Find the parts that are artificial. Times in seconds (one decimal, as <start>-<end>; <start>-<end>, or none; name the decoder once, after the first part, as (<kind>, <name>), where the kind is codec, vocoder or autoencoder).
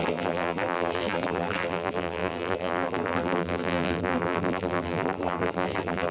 0.0-6.1 (vocoder, BigVGAN v2)